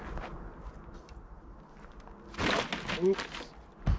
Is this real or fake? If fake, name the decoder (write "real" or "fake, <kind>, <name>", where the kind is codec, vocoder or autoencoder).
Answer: real